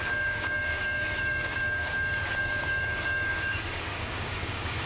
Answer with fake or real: fake